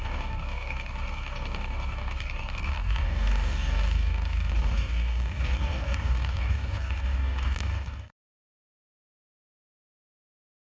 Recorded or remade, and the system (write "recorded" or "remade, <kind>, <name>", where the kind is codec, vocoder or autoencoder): remade, codec, DAC